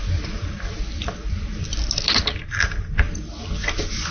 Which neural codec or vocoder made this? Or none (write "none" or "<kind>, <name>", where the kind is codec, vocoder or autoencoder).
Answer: none